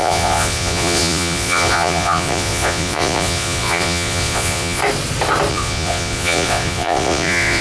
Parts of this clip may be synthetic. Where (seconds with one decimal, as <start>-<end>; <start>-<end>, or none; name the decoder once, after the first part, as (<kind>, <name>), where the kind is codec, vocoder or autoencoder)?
0.0-4.8 (vocoder, Vocos); 5.5-7.6